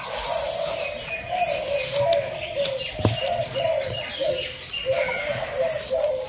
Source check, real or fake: real